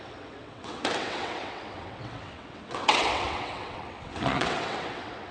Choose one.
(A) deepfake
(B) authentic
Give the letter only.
A